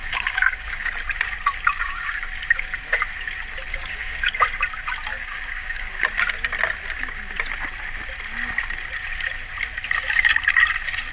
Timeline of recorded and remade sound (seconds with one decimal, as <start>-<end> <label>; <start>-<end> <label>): 0.0-0.9 remade; 0.9-1.7 recorded; 1.7-2.3 remade; 2.3-3.7 recorded; 3.7-4.3 remade; 4.3-5.1 recorded; 5.1-6.0 remade; 6.0-11.1 recorded